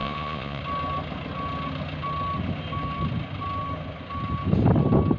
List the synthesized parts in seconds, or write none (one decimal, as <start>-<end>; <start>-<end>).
0.0-0.6